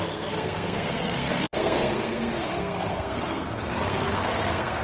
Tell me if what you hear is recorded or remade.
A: remade